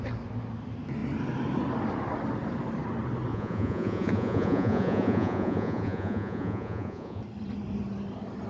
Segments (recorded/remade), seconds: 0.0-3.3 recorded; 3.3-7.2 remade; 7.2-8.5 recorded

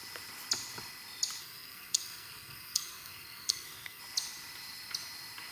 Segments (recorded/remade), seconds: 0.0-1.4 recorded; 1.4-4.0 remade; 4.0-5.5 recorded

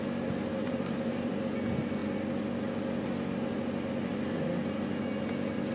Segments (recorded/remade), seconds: 0.0-0.5 recorded; 0.5-1.3 remade; 1.3-5.7 recorded

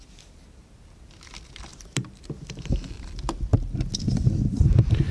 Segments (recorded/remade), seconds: 0.0-3.5 remade; 3.5-4.0 recorded; 4.0-5.1 remade